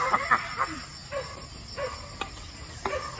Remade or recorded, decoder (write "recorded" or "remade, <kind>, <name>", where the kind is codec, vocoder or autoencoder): recorded